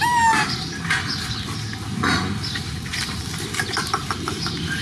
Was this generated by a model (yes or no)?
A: no